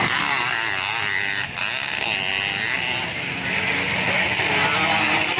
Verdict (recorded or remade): recorded